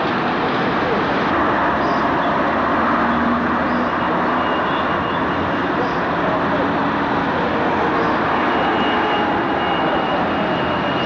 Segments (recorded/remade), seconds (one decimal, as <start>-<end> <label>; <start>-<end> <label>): 0.0-11.1 recorded